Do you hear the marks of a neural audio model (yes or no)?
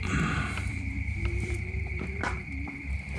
yes